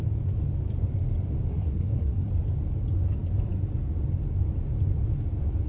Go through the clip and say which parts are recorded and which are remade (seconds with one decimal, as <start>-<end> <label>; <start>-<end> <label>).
0.0-1.5 recorded; 1.5-2.3 remade; 2.3-5.7 recorded